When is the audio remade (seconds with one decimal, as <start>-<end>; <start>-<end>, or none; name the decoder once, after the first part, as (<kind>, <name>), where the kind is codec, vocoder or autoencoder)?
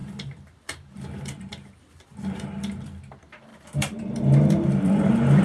0.0-3.0 (vocoder, BigVGAN v2); 3.5-5.4